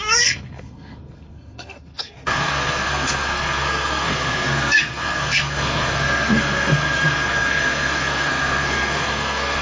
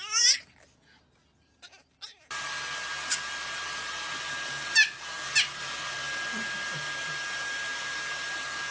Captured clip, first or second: second